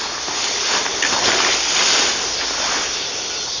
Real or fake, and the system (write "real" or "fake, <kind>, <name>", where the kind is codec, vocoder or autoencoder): real